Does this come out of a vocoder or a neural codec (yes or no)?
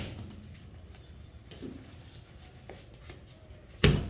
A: no